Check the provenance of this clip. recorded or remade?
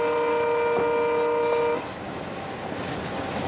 recorded